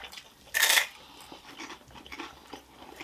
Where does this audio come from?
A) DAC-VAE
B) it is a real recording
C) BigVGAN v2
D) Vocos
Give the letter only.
B